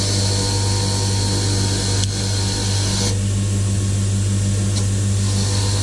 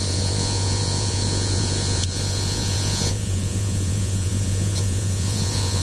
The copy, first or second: second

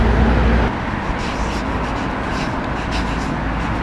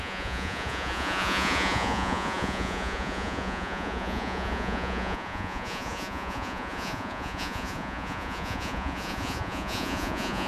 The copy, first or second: second